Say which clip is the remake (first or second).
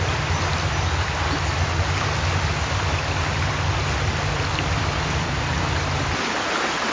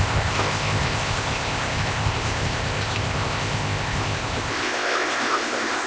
second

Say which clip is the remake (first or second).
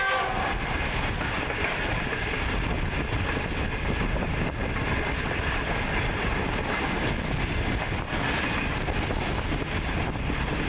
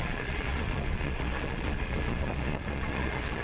second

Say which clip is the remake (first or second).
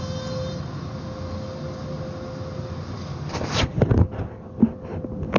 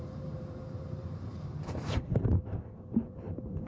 second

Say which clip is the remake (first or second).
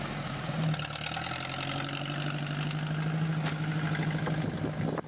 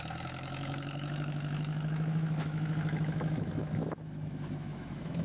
second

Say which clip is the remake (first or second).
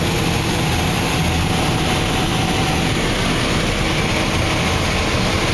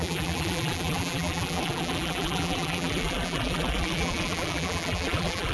second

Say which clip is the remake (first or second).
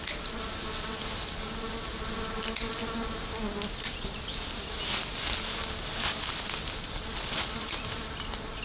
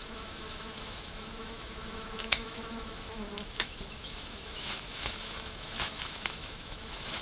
second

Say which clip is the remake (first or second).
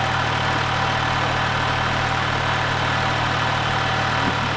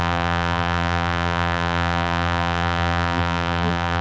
second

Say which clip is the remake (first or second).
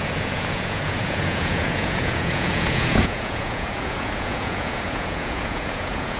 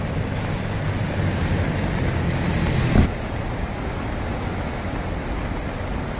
first